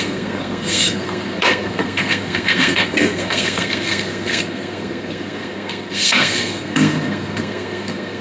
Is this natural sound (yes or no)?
no